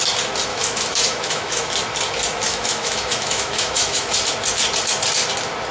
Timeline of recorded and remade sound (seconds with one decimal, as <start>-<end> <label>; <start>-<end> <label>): 0.0-0.5 recorded; 0.5-1.7 remade; 1.7-2.5 recorded; 2.5-4.2 remade; 4.2-5.7 recorded